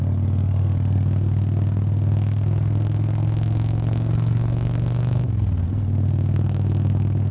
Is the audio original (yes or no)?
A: no